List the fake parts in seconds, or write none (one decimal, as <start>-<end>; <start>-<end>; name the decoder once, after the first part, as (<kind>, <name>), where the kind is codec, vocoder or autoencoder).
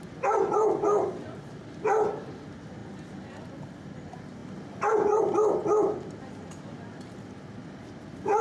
4.4-5.2 (vocoder, BigVGAN v2)